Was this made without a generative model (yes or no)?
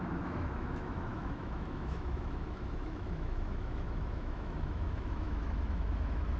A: no